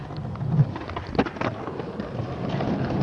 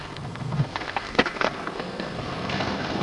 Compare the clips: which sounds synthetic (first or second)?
second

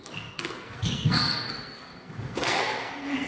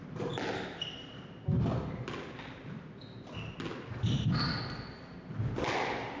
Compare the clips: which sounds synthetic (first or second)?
first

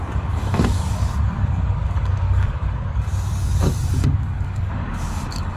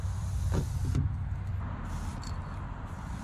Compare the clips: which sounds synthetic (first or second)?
first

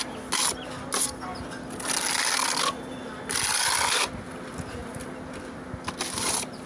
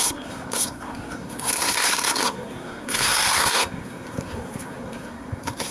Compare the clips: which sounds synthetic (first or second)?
second